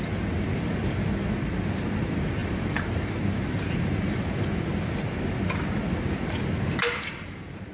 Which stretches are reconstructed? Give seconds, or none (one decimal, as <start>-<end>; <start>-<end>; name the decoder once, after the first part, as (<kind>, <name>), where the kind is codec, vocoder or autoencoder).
2.4-4.6 (vocoder, BigVGAN v2); 6.8-7.7